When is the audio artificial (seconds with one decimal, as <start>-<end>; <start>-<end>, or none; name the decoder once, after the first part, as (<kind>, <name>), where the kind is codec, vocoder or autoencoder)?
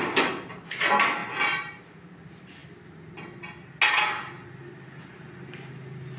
none